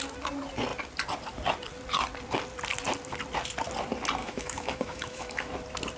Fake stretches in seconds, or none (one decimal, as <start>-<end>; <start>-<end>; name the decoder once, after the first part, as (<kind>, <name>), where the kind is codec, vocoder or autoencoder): 4.2-5.5 (autoencoder, DAC-VAE)